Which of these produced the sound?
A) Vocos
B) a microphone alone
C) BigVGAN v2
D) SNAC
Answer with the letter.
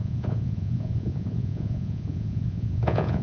A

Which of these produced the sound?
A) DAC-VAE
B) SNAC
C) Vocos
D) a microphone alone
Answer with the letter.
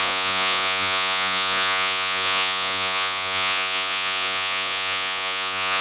C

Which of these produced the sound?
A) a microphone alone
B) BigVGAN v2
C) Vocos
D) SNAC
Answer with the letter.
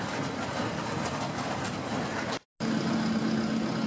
A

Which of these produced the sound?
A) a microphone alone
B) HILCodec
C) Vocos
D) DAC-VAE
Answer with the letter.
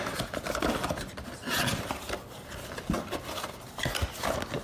A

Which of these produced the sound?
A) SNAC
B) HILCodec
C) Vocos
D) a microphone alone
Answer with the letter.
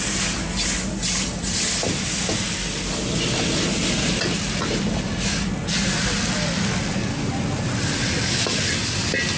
D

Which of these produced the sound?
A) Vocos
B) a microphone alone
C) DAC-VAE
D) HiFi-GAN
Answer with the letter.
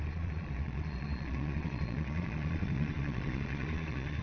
A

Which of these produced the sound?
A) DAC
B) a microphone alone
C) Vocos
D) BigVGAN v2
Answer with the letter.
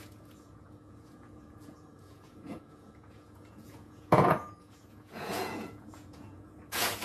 C